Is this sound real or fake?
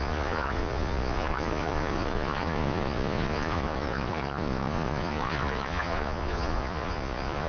fake